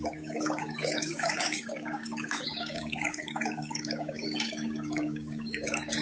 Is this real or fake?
fake